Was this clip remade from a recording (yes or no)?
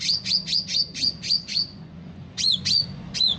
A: yes